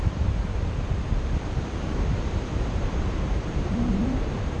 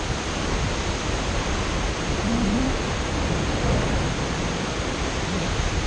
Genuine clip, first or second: second